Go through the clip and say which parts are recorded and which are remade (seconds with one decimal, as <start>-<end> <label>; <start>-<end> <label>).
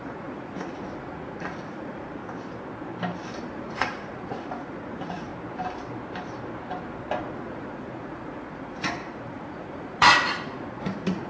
0.0-2.2 remade; 2.2-3.4 recorded; 3.4-5.3 remade; 5.3-7.2 recorded; 7.2-11.3 remade